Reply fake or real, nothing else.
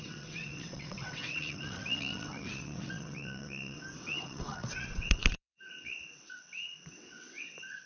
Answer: fake